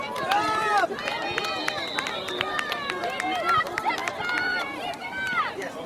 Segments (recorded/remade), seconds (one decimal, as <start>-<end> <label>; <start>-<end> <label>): 0.0-1.0 remade; 1.0-3.5 recorded; 3.5-5.9 remade